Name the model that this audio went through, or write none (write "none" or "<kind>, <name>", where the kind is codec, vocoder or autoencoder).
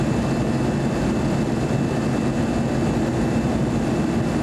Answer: none